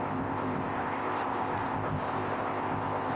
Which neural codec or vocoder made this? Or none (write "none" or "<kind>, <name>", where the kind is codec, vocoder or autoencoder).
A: codec, ZipCodec